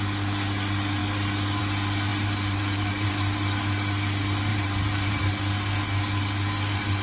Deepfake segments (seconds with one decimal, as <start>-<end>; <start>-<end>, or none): 2.1-3.1; 4.5-5.2